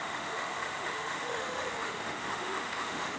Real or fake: fake